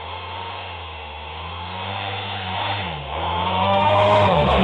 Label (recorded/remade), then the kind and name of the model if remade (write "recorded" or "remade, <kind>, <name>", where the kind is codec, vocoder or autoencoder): remade, autoencoder, DAC-VAE